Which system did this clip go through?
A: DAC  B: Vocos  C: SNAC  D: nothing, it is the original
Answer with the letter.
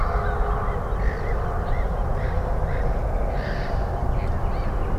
D